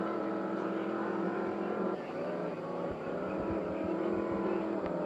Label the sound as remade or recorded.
remade